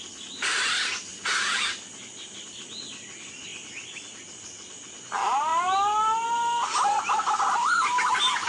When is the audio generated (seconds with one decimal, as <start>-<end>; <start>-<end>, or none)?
1.1-1.9

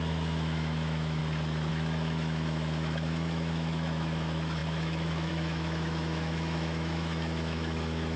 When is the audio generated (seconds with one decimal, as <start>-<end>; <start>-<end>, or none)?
0.0-1.2; 1.7-8.2

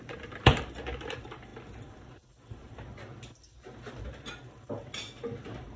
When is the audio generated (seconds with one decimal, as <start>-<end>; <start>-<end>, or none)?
none

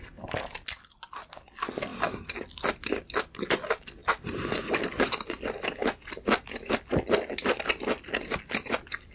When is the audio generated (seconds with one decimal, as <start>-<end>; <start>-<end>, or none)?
none

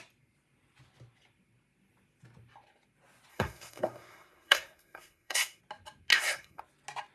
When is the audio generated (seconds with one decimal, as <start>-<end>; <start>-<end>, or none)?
3.3-5.6; 6.1-6.6

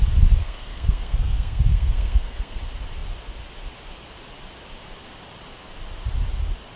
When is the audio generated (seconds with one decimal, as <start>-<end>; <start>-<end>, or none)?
0.4-2.6

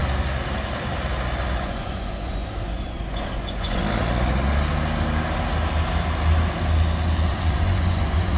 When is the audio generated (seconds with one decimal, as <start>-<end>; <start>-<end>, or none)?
1.6-3.8; 7.3-8.4